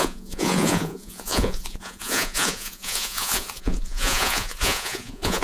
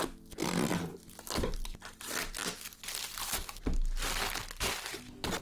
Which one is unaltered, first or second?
second